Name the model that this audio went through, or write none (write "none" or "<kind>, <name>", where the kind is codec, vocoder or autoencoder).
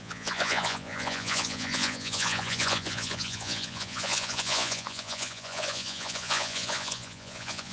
vocoder, Vocos